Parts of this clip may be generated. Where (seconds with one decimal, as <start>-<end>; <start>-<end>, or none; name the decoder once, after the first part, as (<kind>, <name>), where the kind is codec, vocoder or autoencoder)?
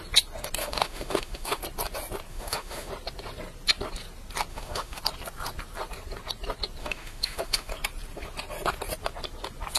0.6-1.6 (autoencoder, DAC-VAE); 2.3-2.9; 4.5-5.0; 6.8-7.7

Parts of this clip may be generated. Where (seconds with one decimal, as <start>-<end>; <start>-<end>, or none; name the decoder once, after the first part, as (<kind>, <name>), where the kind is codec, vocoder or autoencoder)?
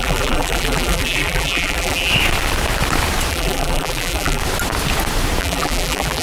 0.0-2.1 (vocoder, BigVGAN v2); 3.3-4.4; 5.4-6.2